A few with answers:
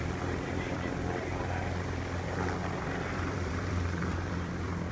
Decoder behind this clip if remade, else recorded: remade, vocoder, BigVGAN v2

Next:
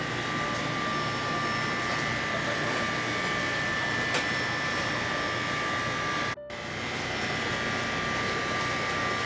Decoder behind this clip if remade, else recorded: recorded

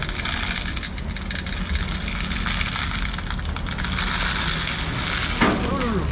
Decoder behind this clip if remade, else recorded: recorded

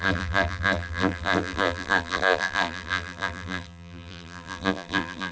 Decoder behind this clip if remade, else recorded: remade, vocoder, BigVGAN v2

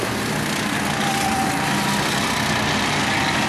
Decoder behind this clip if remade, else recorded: recorded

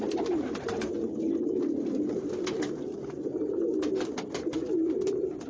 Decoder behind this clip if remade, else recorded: recorded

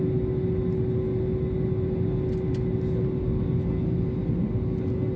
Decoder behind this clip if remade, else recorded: recorded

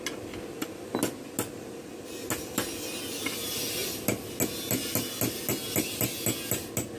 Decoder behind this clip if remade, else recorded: recorded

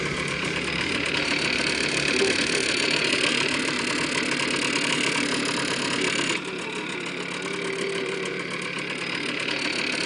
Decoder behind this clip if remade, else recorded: remade, vocoder, BigVGAN v2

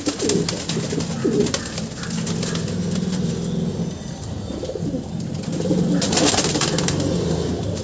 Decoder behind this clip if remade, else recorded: recorded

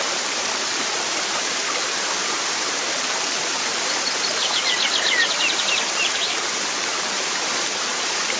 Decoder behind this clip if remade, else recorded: remade, vocoder, BigVGAN v2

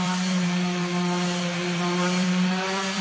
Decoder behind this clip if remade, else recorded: remade, vocoder, BigVGAN v2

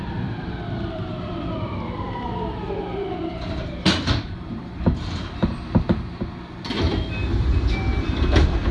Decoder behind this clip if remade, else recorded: remade, vocoder, BigVGAN v2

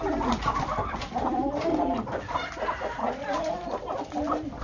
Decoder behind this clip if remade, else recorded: remade, vocoder, BigVGAN v2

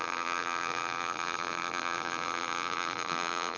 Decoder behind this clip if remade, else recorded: remade, vocoder, BigVGAN v2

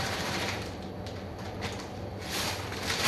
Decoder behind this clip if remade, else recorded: remade, vocoder, BigVGAN v2